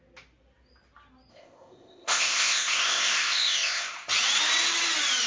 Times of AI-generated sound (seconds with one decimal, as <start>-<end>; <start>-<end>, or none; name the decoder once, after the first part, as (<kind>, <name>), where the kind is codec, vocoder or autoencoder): 1.3-4.1 (codec, ZipCodec)